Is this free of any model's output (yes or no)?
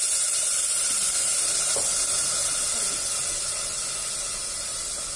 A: yes